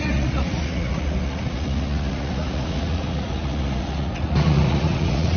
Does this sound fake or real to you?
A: fake